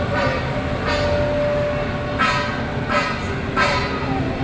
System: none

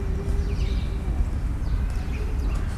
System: none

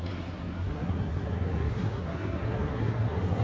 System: codec, SNAC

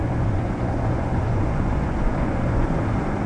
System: vocoder, Vocos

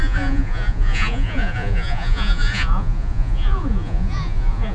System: vocoder, Vocos